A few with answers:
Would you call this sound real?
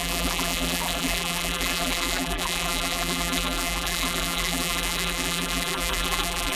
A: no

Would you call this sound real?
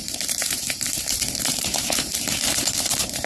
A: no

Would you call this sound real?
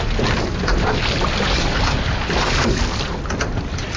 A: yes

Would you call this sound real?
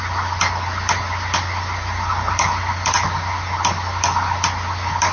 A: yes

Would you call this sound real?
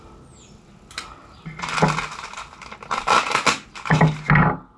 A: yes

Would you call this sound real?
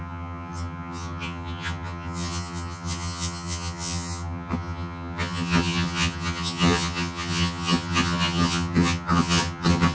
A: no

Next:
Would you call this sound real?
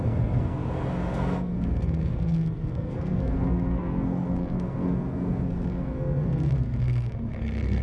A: no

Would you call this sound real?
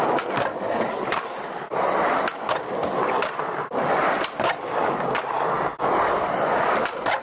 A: yes